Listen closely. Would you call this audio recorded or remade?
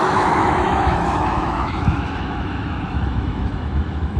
remade